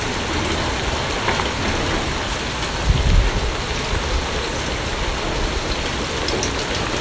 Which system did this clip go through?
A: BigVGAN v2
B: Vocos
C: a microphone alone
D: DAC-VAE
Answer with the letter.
C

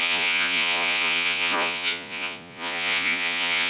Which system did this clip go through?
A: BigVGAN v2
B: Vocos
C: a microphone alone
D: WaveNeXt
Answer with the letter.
B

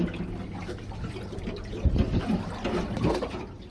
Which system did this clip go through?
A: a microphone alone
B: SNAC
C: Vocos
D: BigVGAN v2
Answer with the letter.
A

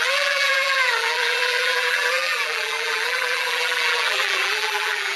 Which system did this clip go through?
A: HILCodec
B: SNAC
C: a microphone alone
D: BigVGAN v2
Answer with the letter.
D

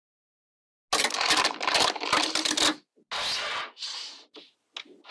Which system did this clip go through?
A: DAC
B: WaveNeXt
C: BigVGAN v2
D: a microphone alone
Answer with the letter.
D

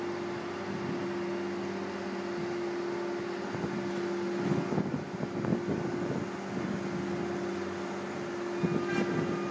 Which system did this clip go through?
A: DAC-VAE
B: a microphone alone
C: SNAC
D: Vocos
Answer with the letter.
B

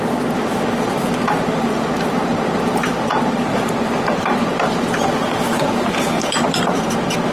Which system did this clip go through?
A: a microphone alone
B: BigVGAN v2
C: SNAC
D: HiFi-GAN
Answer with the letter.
B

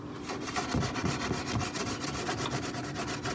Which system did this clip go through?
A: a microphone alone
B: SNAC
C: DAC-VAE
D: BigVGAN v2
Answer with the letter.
A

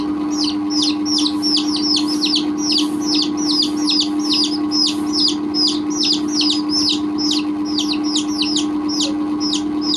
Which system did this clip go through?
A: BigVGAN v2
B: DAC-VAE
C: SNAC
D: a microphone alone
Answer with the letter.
D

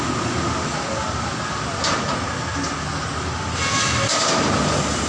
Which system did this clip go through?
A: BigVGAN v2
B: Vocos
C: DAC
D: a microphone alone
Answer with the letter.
D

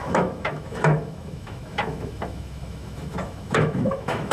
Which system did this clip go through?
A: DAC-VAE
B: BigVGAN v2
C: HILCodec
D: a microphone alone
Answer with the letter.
A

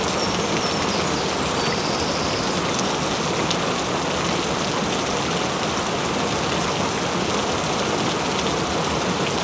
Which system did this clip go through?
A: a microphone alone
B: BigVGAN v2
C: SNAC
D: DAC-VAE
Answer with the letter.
A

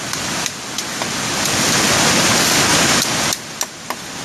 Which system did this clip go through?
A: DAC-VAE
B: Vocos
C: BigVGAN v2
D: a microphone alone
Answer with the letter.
D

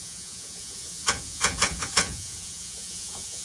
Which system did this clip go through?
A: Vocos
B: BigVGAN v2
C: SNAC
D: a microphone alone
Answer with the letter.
A